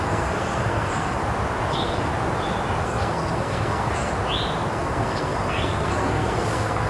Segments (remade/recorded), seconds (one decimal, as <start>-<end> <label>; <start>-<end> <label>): 0.0-1.2 remade; 1.2-1.7 recorded; 1.7-2.1 remade; 2.1-2.8 recorded; 2.8-4.1 remade; 4.1-4.7 recorded; 4.7-6.9 remade